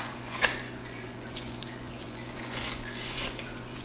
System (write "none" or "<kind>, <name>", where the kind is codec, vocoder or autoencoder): vocoder, Vocos